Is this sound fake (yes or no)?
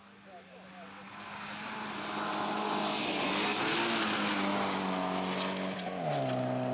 no